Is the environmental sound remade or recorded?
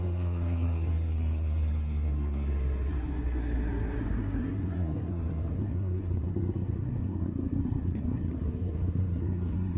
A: remade